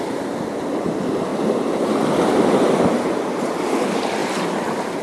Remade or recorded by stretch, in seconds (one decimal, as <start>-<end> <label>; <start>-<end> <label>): 0.0-4.2 recorded; 4.2-5.0 remade